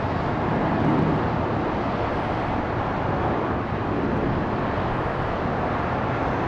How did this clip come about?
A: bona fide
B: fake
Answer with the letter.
A